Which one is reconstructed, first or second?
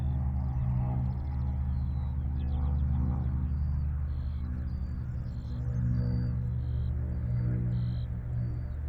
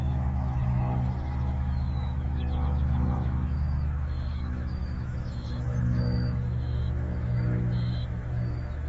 second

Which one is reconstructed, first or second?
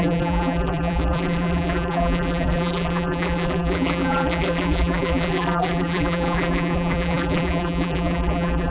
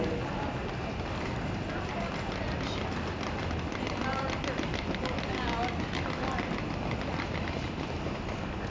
first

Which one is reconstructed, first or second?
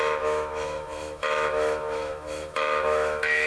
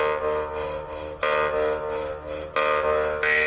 first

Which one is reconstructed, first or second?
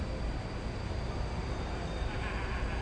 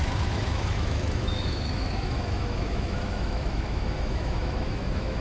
second